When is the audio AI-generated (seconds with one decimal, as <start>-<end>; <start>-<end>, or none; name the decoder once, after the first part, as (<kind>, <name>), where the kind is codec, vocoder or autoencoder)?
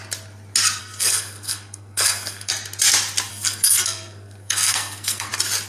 0.8-2.5 (codec, SNAC); 3.3-5.3